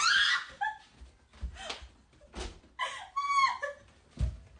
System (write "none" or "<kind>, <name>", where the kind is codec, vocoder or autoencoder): none